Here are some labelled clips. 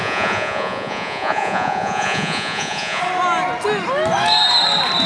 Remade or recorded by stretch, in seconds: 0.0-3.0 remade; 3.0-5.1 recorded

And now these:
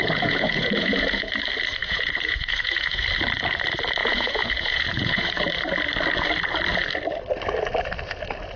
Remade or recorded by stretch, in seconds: 0.0-1.3 remade; 1.3-1.8 recorded; 1.8-3.1 remade; 3.1-4.0 recorded; 4.0-5.5 remade; 5.5-8.6 recorded

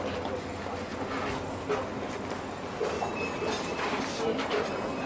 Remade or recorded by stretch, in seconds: 0.0-5.1 recorded

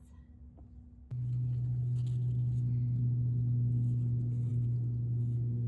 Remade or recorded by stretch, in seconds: 0.0-5.7 recorded

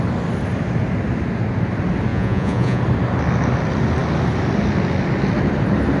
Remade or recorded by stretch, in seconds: 0.0-2.1 recorded; 2.1-2.8 remade; 2.8-6.0 recorded

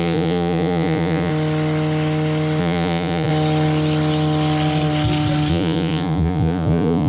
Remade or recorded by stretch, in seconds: 0.0-1.3 remade; 1.3-2.6 recorded; 2.6-3.3 remade; 3.3-5.5 recorded; 5.5-7.1 remade

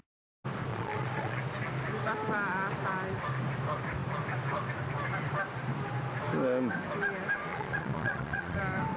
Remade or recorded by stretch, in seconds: 0.0-0.7 recorded; 0.7-1.4 remade; 1.4-7.5 recorded; 7.5-8.6 remade; 8.6-9.0 recorded

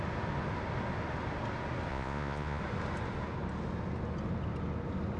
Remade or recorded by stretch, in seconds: 0.0-1.9 recorded; 1.9-2.6 remade; 2.6-5.2 recorded